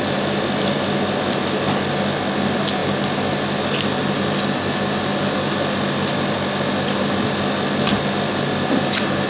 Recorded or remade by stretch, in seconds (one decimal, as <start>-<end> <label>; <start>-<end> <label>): 0.0-9.3 recorded